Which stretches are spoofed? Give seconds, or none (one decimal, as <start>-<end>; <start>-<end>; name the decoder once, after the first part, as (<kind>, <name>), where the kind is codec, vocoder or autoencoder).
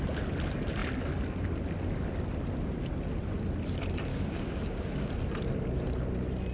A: 4.1-5.1 (codec, DAC)